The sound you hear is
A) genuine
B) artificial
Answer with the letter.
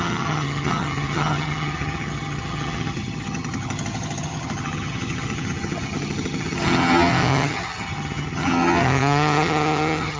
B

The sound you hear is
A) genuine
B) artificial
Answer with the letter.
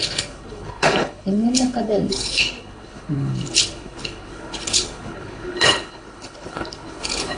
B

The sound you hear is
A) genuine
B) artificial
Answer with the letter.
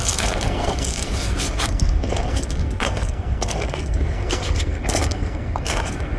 B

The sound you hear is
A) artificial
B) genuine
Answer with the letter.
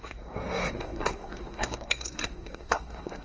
A